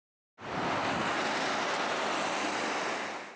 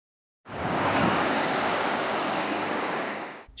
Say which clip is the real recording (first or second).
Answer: first